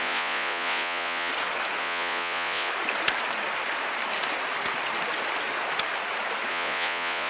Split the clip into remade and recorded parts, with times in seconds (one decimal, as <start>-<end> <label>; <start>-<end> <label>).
0.0-1.3 remade; 1.3-1.8 recorded; 1.8-2.7 remade; 2.7-6.5 recorded; 6.5-7.3 remade